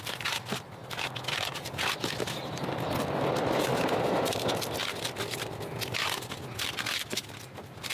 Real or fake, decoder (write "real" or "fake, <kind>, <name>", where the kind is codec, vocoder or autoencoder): real